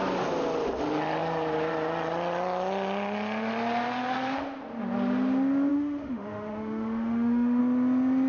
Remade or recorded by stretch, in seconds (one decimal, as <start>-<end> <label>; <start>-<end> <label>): 0.0-5.7 recorded; 5.7-7.6 remade; 7.6-8.3 recorded